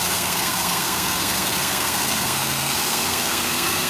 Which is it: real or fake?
fake